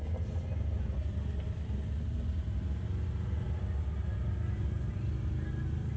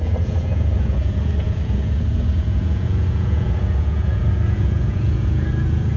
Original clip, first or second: first